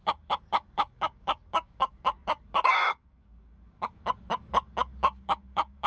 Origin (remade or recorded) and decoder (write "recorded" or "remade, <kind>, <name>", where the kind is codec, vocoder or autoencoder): remade, codec, DAC